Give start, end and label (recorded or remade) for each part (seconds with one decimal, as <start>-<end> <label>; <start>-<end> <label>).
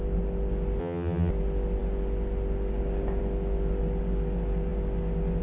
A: 0.0-0.8 recorded; 0.8-1.3 remade; 1.3-5.4 recorded